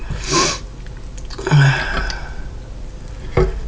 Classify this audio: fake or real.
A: real